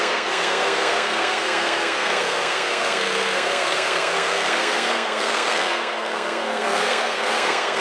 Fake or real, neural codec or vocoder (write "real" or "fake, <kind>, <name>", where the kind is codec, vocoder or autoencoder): fake, codec, SNAC